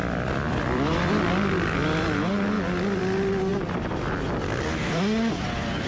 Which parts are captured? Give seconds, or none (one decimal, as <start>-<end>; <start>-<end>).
1.2-5.9